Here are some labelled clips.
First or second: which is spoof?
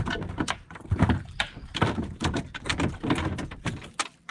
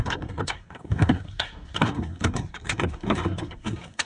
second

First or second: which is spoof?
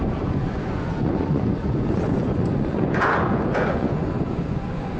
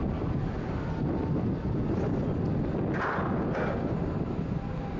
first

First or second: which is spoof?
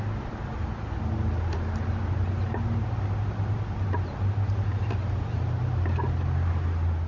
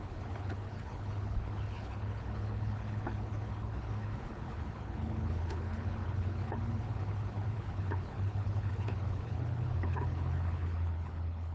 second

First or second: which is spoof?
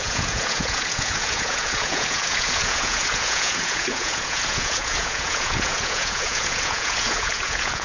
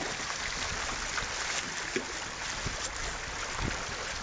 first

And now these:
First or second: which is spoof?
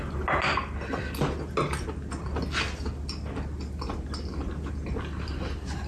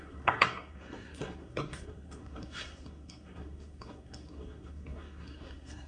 second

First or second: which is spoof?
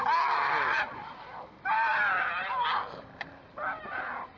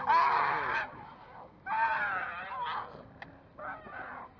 first